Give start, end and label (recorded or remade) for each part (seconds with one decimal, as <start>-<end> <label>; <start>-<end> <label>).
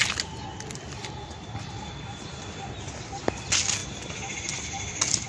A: 0.0-5.3 recorded